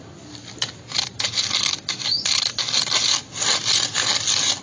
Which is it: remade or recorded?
recorded